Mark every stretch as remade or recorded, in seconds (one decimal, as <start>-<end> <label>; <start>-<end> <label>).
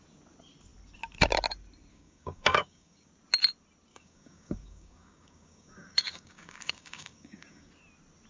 0.0-1.9 recorded; 1.9-3.1 remade; 3.1-3.9 recorded; 3.9-7.7 remade; 7.7-8.3 recorded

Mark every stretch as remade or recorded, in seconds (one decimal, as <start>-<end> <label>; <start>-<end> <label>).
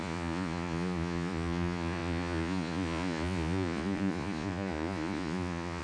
0.0-5.8 remade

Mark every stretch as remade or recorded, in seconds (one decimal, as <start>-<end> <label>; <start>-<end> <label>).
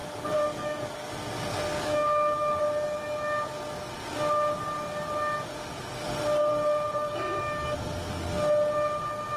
0.0-1.1 remade; 1.1-1.5 recorded; 1.5-2.6 remade; 2.6-6.5 recorded; 6.5-7.4 remade; 7.4-9.4 recorded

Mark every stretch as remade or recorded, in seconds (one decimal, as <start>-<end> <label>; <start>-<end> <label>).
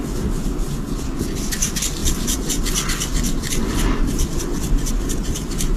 0.0-5.8 recorded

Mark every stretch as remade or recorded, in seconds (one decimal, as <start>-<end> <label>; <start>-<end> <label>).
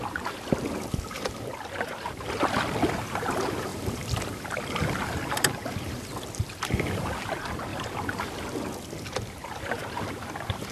0.0-3.7 recorded; 3.7-6.7 remade; 6.7-7.7 recorded; 7.7-8.3 remade; 8.3-10.7 recorded